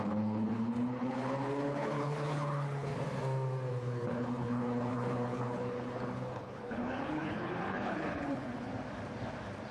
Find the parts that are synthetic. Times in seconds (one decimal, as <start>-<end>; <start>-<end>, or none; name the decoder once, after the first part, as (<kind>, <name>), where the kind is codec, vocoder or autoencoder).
0.0-2.9 (codec, HILCodec); 3.7-8.7